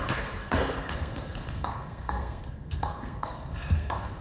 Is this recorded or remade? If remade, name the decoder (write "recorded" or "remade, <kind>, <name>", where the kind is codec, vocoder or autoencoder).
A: remade, codec, SNAC